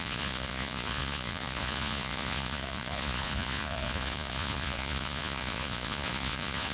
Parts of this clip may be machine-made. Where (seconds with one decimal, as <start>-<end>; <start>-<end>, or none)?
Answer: 0.0-6.7